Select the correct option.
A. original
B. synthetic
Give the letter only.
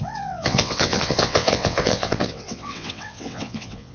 B